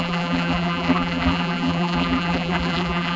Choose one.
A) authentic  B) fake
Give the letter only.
B